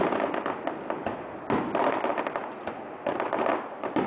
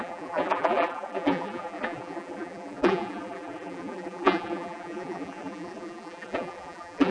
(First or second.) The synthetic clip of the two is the second